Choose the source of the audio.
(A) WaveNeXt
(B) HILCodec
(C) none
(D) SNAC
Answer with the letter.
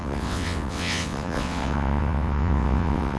A